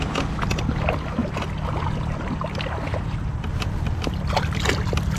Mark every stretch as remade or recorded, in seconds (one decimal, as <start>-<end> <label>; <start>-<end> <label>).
0.0-5.2 recorded